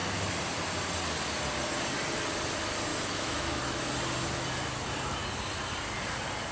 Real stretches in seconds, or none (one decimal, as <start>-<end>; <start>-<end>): 0.0-2.9; 3.8-6.5